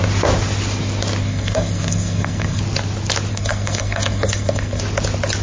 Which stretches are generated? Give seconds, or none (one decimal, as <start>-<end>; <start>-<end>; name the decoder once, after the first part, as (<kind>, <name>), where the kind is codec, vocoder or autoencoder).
1.2-2.6 (codec, SNAC); 3.3-4.8